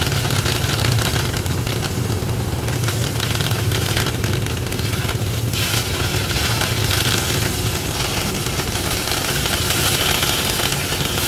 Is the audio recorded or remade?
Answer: recorded